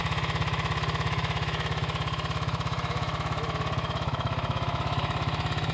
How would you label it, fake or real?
fake